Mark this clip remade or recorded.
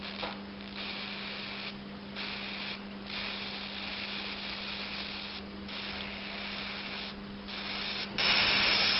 recorded